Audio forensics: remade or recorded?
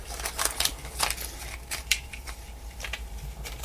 remade